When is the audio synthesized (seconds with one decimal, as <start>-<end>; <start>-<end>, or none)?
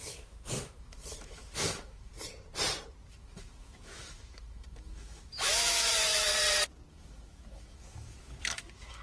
0.0-2.1; 3.1-6.3; 6.9-9.0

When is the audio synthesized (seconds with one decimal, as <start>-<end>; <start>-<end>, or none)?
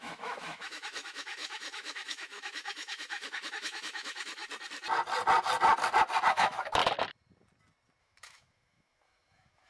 0.0-4.4; 6.3-6.8; 8.0-9.7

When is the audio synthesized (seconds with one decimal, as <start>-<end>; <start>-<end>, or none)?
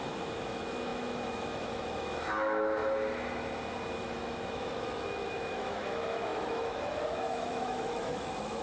0.0-2.8; 4.0-8.6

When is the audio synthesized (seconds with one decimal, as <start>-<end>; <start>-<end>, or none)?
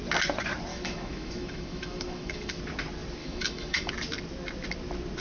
0.7-2.6; 3.2-3.9